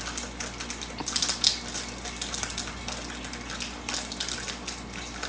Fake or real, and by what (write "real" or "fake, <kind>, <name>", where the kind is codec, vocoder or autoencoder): real